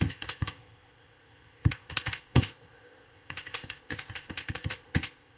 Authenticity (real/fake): fake